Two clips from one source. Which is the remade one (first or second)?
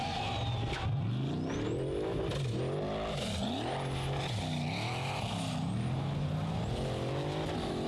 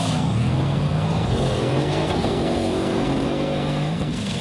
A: second